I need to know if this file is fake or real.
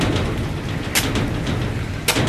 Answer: real